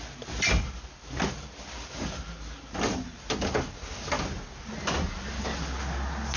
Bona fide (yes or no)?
yes